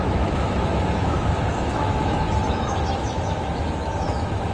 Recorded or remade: remade